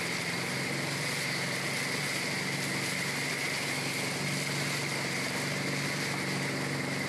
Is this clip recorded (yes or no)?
yes